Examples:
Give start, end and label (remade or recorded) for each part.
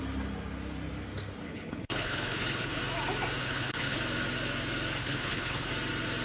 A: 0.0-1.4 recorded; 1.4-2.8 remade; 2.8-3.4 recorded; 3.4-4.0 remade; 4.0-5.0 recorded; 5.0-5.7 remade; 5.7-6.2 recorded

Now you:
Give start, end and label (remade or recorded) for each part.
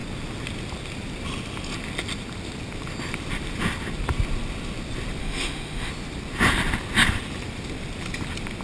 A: 0.0-5.2 recorded; 5.2-5.9 remade; 5.9-8.6 recorded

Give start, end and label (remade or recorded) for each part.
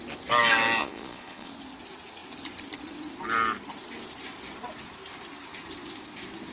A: 0.0-0.8 recorded; 0.8-1.5 remade; 1.5-6.5 recorded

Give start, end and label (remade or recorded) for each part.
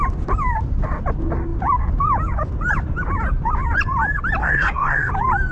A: 0.0-4.4 recorded; 4.4-5.1 remade; 5.1-5.5 recorded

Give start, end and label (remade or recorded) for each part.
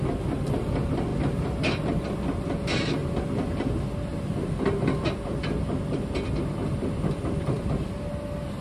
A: 0.0-8.6 recorded